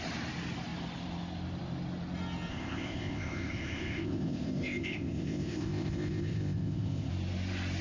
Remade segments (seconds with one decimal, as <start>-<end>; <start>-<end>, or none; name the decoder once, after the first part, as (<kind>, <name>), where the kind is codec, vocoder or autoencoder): 2.5-7.1 (codec, ZipCodec)